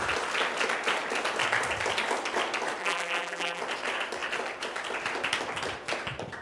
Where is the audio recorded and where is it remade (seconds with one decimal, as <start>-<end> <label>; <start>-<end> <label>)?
0.0-2.8 recorded; 2.8-3.6 remade; 3.6-6.4 recorded